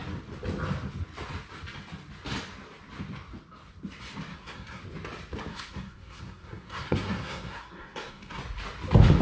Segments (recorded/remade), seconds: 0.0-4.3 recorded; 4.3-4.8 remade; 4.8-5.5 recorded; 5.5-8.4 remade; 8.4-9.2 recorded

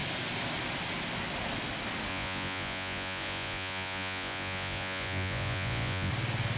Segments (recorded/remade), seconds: 0.0-2.1 recorded; 2.1-6.1 remade; 6.1-6.6 recorded